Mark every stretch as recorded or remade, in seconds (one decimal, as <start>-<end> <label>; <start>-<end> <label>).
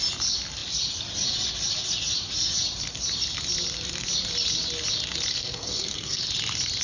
0.0-5.3 recorded; 5.3-6.2 remade; 6.2-6.8 recorded